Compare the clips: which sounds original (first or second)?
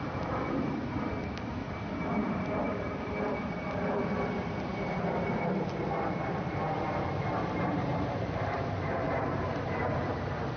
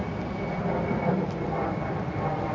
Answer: second